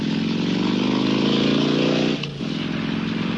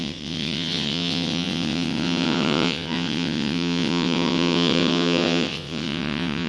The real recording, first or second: first